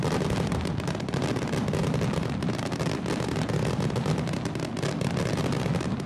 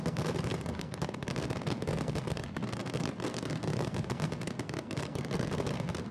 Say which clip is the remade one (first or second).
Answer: second